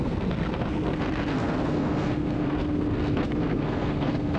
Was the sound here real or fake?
fake